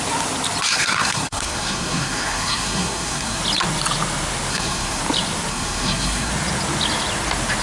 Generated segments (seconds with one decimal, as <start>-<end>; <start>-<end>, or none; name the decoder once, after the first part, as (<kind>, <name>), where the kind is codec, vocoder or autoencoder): 0.7-3.4 (codec, SNAC); 4.5-5.0; 5.5-6.3